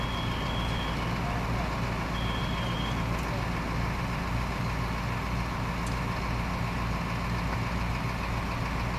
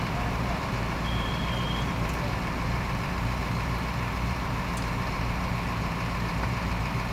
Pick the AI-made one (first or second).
second